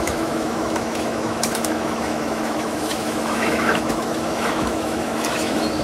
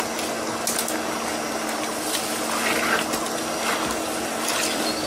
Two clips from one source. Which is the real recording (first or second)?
second